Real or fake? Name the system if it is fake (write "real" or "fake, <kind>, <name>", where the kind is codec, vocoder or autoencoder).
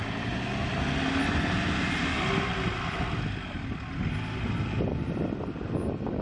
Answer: real